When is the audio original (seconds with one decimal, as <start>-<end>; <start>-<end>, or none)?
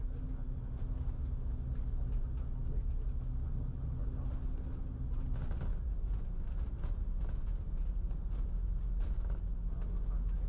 0.0-10.5